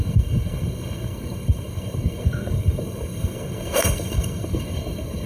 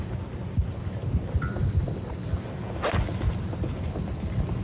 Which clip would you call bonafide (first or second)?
second